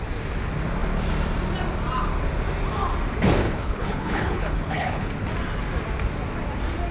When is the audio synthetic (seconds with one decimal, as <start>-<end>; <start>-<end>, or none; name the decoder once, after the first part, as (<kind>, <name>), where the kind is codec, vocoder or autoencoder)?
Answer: 3.4-5.1 (codec, HILCodec)